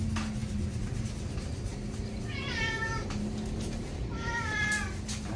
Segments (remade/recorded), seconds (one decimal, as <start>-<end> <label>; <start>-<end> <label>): 0.0-0.4 recorded; 0.4-1.1 remade; 1.1-5.4 recorded